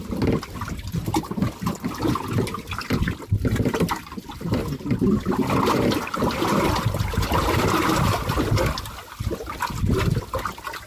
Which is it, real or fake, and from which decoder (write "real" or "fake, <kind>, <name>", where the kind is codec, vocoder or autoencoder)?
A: real